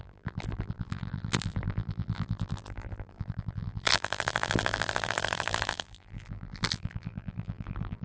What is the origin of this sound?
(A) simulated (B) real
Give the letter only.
A